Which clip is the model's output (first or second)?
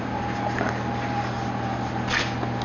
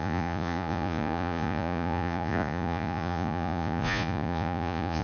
second